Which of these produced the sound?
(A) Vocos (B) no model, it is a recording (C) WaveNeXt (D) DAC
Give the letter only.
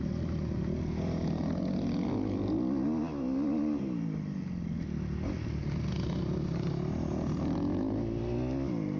B